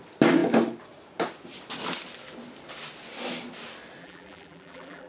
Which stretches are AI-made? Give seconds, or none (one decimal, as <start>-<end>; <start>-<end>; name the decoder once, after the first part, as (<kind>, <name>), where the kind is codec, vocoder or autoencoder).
4.0-5.1 (vocoder, BigVGAN v2)